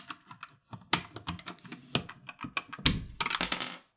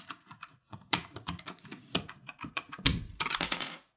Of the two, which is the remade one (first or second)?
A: second